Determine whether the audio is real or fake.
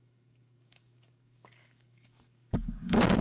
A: fake